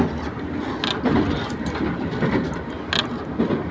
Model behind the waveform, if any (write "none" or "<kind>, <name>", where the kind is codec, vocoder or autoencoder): none